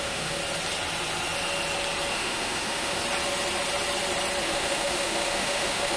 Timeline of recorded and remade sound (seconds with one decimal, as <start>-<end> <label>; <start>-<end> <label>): 0.0-0.4 remade; 0.4-2.1 recorded; 2.1-3.0 remade; 3.0-4.4 recorded; 4.4-6.0 remade